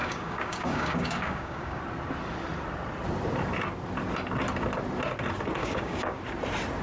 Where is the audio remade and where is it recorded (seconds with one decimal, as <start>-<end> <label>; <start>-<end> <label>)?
0.0-1.8 remade; 1.8-5.6 recorded; 5.6-6.2 remade; 6.2-6.8 recorded